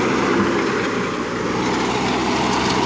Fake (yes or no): no